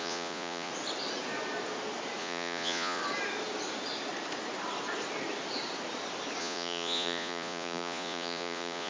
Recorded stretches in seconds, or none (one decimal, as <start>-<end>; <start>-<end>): 0.7-2.2; 3.0-6.4